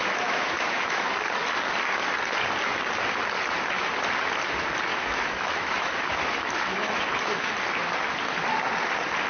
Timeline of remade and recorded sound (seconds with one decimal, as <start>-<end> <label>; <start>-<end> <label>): 0.0-1.1 remade; 1.1-4.9 recorded; 4.9-7.5 remade; 7.5-9.3 recorded